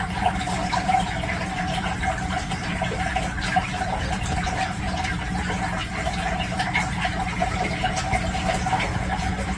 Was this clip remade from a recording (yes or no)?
yes